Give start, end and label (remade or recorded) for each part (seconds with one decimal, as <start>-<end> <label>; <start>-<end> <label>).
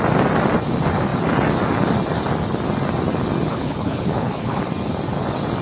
0.0-3.5 recorded; 3.5-4.6 remade; 4.6-5.6 recorded